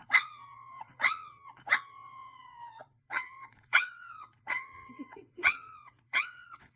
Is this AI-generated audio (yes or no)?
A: yes